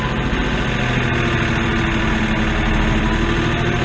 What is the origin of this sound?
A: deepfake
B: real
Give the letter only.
B